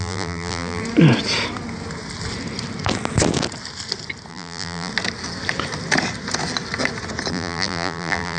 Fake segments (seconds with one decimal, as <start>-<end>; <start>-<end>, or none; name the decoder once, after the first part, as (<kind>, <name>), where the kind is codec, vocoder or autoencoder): 0.0-0.8 (vocoder, BigVGAN v2); 4.3-4.9; 7.3-8.4